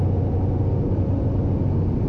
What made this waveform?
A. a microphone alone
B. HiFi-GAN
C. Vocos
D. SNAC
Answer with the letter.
A